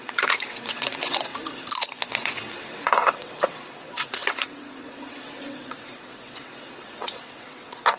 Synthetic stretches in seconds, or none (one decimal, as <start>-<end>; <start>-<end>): 0.0-1.3; 2.1-8.0